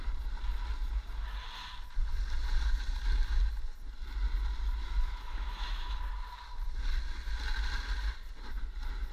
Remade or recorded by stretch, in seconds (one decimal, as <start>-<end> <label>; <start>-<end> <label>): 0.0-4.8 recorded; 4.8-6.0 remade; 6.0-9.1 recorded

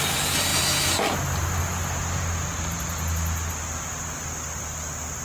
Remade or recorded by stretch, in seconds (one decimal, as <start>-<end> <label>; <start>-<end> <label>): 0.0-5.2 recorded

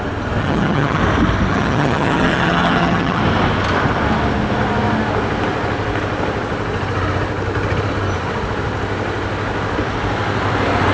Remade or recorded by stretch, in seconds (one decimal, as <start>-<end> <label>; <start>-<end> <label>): 0.0-0.4 recorded; 0.4-1.0 remade; 1.0-1.5 recorded; 1.5-3.2 remade; 3.2-10.9 recorded

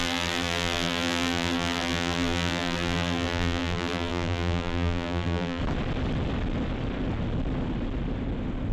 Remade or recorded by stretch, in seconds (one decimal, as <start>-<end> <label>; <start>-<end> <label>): 0.0-5.6 remade; 5.6-8.7 recorded